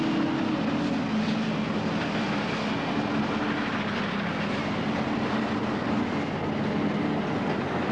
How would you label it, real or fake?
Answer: real